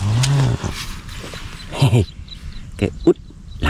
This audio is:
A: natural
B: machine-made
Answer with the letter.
A